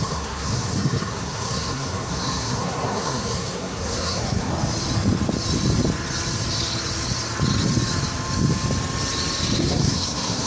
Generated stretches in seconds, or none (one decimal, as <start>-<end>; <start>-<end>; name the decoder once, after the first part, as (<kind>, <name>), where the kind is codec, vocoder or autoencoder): 0.0-4.5 (codec, SNAC); 9.6-10.5